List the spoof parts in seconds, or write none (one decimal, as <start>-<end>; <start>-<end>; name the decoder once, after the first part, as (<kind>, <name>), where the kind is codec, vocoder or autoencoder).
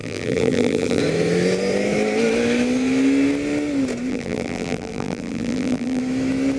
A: 0.0-1.0 (vocoder, BigVGAN v2); 4.1-6.0